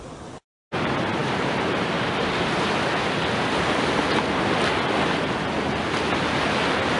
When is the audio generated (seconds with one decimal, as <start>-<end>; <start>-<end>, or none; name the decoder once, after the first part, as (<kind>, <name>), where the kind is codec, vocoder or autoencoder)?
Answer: none